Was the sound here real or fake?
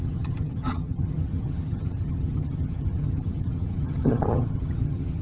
fake